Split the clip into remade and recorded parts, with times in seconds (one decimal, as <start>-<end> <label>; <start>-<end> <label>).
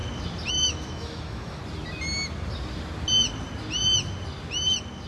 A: 0.0-0.5 recorded; 0.5-1.6 remade; 1.6-5.1 recorded